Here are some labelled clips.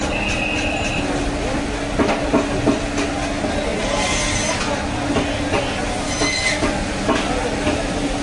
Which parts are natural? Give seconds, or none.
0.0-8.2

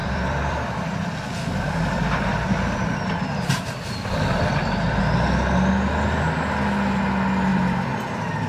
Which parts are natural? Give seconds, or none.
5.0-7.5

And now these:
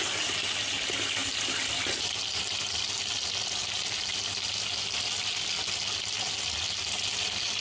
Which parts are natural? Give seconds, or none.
0.0-7.6